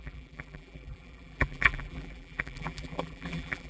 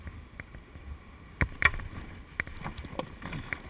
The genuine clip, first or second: second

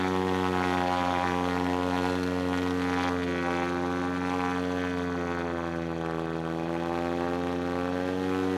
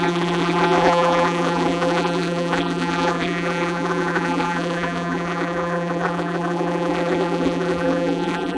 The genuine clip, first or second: first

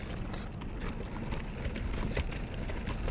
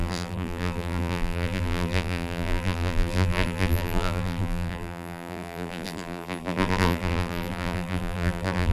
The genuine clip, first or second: first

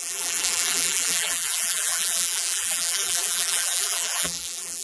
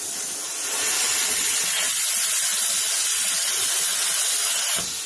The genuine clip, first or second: second